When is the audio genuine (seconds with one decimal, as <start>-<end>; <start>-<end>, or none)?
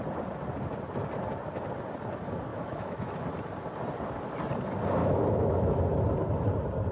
0.0-2.5; 3.2-5.0; 5.8-6.9